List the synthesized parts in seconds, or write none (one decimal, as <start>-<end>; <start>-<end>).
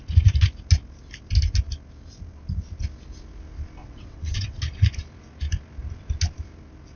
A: 3.8-4.6